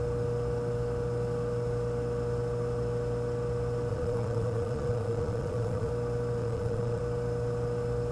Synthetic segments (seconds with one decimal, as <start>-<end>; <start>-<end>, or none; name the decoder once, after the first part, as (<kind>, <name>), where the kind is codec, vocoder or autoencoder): 3.9-5.9 (vocoder, Vocos); 6.4-7.0